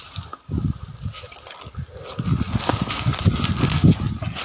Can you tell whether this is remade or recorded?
recorded